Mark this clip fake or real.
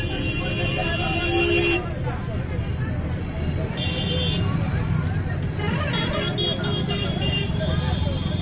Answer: real